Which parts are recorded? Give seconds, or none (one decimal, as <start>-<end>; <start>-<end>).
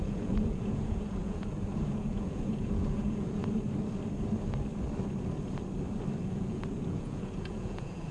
3.4-6.2